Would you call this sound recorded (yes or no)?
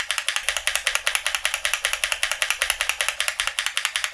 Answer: yes